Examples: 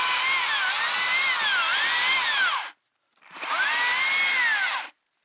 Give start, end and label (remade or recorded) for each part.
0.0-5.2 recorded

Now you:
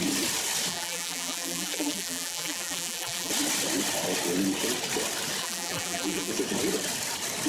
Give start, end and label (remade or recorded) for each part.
0.0-0.7 recorded; 0.7-3.3 remade; 3.3-5.4 recorded; 5.4-6.3 remade; 6.3-7.5 recorded

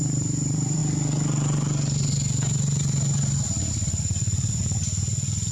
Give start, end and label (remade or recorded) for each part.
0.0-0.8 remade; 0.8-3.7 recorded; 3.7-4.6 remade; 4.6-5.5 recorded

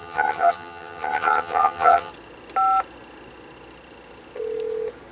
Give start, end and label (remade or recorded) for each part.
0.0-2.1 remade; 2.1-5.1 recorded

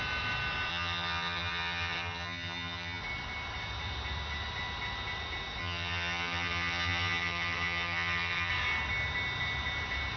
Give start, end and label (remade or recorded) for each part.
0.0-0.7 recorded; 0.7-3.0 remade; 3.0-5.6 recorded; 5.6-8.5 remade; 8.5-10.2 recorded

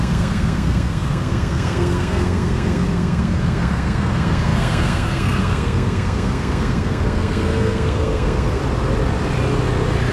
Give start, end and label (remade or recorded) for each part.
0.0-8.6 remade; 8.6-10.1 recorded

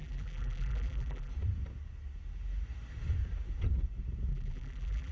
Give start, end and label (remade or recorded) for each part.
0.0-1.3 remade; 1.3-4.3 recorded; 4.3-5.1 remade

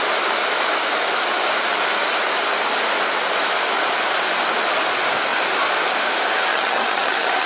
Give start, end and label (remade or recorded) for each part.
0.0-6.5 recorded; 6.5-7.5 remade